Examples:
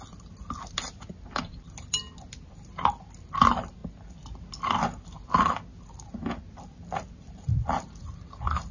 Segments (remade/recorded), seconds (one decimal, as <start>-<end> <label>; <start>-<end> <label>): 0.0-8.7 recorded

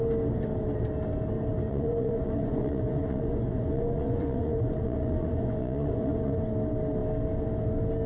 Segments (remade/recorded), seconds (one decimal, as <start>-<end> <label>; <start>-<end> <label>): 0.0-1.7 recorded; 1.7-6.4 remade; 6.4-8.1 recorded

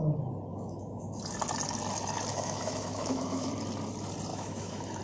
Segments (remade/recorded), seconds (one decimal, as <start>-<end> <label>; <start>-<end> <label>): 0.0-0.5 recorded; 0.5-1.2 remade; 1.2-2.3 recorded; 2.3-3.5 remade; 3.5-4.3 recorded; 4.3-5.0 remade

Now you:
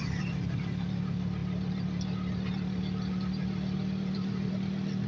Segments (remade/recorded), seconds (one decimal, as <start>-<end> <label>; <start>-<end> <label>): 0.0-5.1 recorded

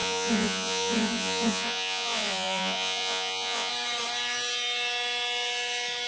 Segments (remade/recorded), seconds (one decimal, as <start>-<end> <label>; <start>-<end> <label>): 0.0-3.7 remade; 3.7-6.1 recorded

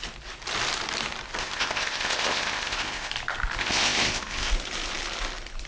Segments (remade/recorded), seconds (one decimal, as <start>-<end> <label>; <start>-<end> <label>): 0.0-1.4 recorded; 1.4-3.1 remade; 3.1-3.6 recorded; 3.6-4.5 remade; 4.5-5.7 recorded

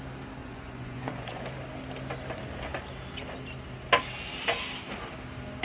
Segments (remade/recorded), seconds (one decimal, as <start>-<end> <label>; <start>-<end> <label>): 0.0-0.4 recorded; 0.4-1.4 remade; 1.4-5.6 recorded

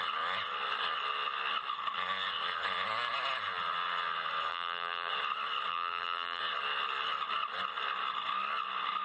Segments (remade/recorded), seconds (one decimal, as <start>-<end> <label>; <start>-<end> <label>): 0.0-4.5 recorded; 4.5-5.1 remade; 5.1-5.7 recorded; 5.7-6.4 remade; 6.4-9.0 recorded